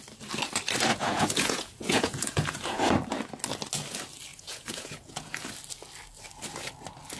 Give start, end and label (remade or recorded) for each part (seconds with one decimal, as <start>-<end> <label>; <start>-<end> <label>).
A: 0.0-0.9 recorded; 0.9-2.9 remade; 2.9-4.3 recorded; 4.3-5.4 remade; 5.4-7.2 recorded